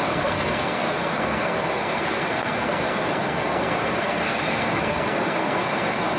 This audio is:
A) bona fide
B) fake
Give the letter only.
B